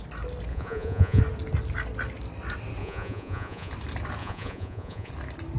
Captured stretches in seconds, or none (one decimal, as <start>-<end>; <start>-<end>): 0.0-0.5; 1.2-2.8; 3.7-4.2; 5.1-5.6